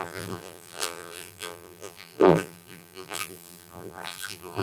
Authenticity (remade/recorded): remade